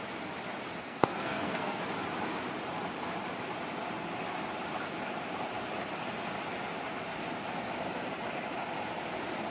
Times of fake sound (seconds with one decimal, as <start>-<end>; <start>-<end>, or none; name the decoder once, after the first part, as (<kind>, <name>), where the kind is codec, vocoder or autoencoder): 0.8-1.8 (codec, SNAC)